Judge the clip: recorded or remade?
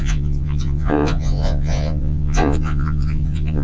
remade